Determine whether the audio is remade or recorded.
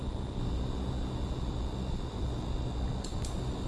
recorded